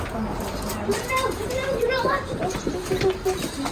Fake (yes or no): no